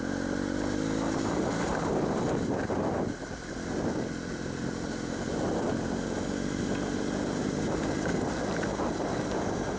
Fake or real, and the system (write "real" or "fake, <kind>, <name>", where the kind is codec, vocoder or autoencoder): real